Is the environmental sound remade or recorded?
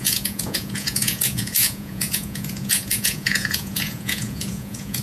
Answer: remade